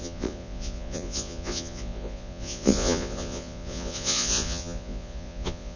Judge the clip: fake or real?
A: fake